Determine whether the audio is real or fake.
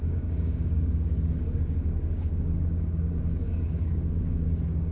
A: fake